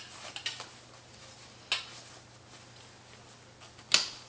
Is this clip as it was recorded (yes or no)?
yes